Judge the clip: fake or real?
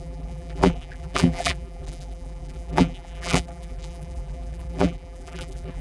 fake